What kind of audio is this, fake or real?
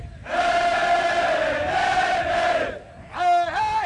real